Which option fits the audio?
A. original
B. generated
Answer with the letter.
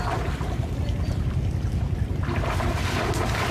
A